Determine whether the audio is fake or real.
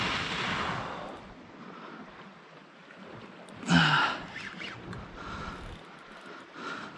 real